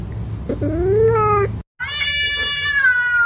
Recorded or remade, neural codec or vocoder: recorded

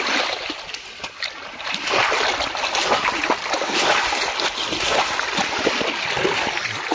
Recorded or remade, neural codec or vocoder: recorded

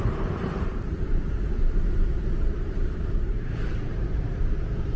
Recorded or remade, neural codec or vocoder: remade, vocoder, BigVGAN v2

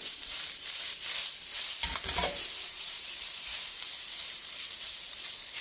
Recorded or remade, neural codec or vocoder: remade, vocoder, BigVGAN v2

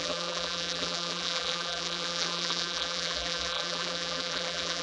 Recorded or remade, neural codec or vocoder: remade, vocoder, BigVGAN v2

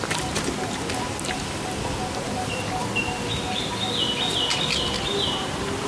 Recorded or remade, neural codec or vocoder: recorded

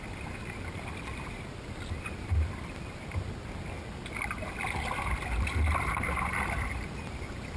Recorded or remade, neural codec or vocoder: recorded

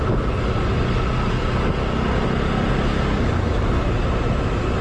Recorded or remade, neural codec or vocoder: recorded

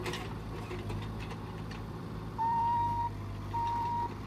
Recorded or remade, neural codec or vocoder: remade, vocoder, BigVGAN v2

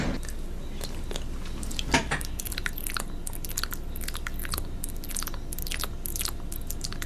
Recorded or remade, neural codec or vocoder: recorded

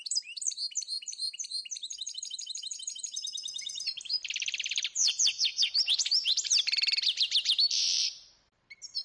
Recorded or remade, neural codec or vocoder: remade, vocoder, BigVGAN v2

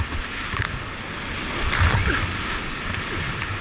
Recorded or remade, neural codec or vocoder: recorded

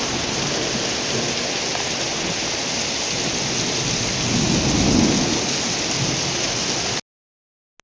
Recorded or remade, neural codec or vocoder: recorded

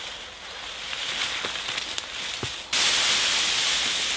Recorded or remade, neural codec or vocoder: recorded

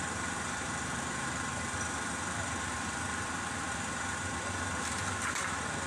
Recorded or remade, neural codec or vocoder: remade, vocoder, BigVGAN v2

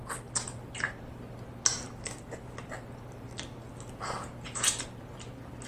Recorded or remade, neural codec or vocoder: recorded